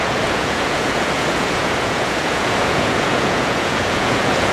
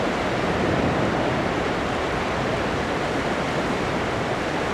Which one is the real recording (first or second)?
second